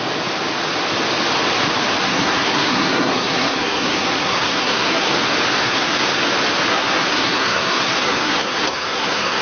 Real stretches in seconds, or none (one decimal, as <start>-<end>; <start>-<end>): 0.0-2.1; 5.1-5.6; 6.2-6.7